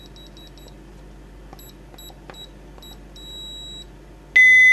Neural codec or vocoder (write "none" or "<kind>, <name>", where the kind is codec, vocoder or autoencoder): none